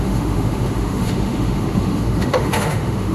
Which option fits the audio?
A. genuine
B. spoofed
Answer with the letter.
B